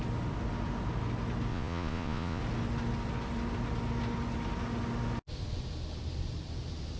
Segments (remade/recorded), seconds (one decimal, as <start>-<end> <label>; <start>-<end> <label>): 0.0-1.5 recorded; 1.5-2.4 remade; 2.4-7.0 recorded